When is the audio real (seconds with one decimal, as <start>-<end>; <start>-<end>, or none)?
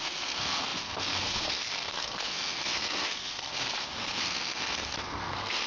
none